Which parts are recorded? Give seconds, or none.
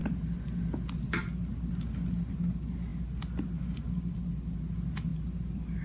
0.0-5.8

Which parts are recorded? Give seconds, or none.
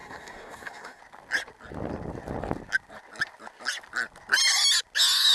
1.0-5.3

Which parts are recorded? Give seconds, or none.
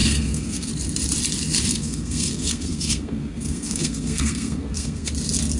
0.7-1.7; 5.1-5.6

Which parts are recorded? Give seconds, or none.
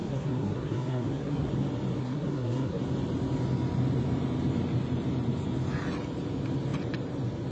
1.5-2.0; 2.8-7.5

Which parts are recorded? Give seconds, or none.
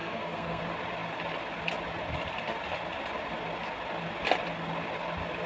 0.6-5.5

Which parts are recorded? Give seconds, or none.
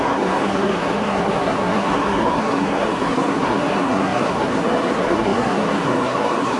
none